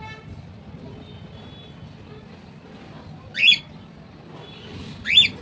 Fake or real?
real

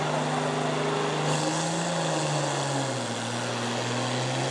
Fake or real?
real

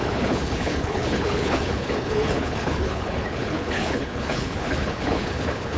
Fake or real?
fake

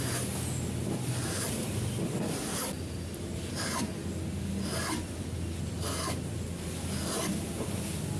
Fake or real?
real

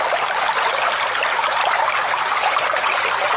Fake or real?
real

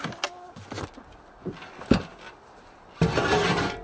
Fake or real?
real